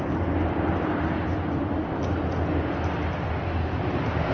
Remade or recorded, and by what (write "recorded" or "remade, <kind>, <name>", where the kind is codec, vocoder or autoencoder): recorded